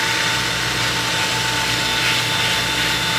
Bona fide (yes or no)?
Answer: yes